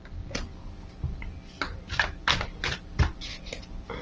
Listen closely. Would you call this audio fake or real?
real